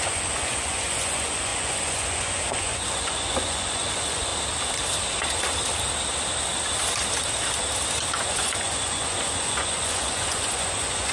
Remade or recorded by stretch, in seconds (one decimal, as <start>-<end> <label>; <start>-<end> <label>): 0.0-4.3 remade; 4.3-8.1 recorded; 8.1-11.1 remade